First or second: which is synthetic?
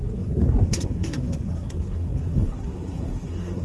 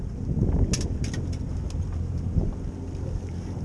first